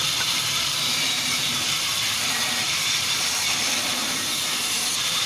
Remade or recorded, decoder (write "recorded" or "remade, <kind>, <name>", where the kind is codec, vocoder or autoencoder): remade, vocoder, BigVGAN v2